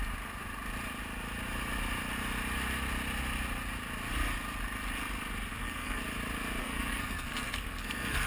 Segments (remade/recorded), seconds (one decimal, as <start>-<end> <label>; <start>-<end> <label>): 0.0-5.5 recorded; 5.5-6.0 remade; 6.0-6.6 recorded; 6.6-8.3 remade